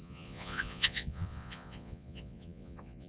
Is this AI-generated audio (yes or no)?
yes